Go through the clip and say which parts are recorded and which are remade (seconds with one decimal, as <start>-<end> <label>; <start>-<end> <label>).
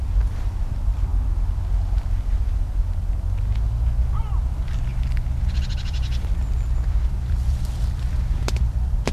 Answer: 0.0-1.1 remade; 1.1-4.2 recorded; 4.2-4.9 remade; 4.9-5.5 recorded; 5.5-9.1 remade